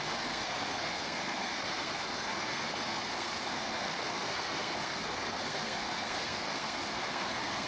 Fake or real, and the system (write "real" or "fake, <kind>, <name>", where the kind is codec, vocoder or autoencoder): fake, codec, SNAC